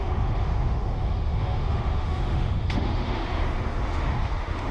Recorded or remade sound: remade